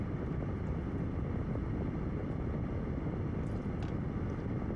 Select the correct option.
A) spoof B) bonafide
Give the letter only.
B